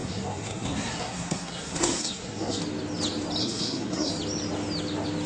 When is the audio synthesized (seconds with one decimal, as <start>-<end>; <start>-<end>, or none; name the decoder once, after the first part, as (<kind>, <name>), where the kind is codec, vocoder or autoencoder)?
0.0-2.6 (codec, SNAC); 3.4-4.1

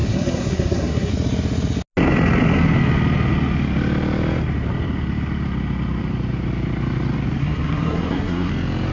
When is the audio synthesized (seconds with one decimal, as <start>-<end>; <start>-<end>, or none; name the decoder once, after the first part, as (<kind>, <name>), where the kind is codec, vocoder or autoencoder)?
0.0-1.1 (codec, SNAC); 7.4-8.5

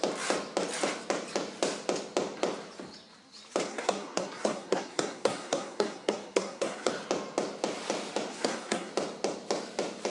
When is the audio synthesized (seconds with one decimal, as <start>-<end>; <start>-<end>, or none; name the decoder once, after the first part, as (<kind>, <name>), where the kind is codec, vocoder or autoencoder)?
3.7-6.9 (codec, SNAC); 8.3-8.9

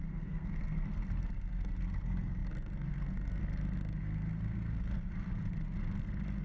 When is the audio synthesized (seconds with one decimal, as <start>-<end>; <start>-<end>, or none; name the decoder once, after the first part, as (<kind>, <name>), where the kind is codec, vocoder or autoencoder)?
0.0-3.4 (codec, SNAC); 4.0-5.3

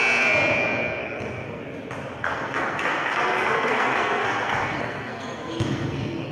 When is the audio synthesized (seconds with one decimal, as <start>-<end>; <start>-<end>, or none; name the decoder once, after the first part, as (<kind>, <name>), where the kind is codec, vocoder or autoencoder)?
1.0-1.6 (codec, SNAC); 2.2-6.3

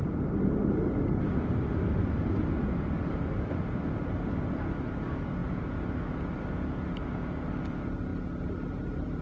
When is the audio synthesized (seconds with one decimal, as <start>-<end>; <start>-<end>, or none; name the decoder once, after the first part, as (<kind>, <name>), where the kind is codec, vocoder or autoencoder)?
none